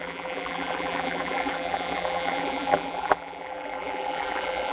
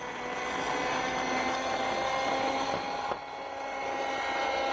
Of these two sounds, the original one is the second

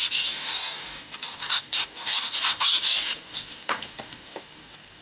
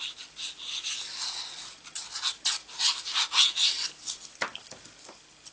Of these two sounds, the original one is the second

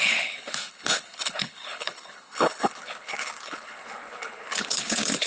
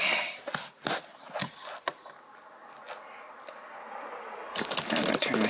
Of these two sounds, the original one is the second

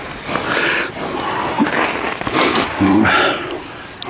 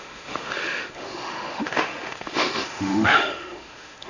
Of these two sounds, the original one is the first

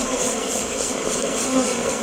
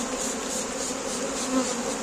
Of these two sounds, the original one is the second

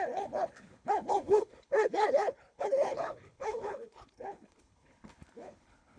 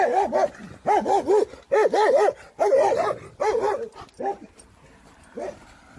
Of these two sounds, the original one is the second